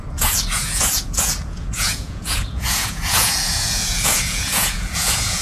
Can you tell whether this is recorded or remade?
remade